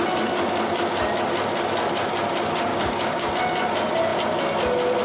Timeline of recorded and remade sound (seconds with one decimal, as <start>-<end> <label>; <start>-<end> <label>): 0.0-2.7 recorded; 2.7-3.3 remade; 3.3-5.0 recorded